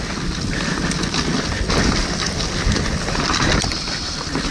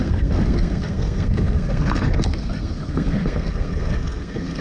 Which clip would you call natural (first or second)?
first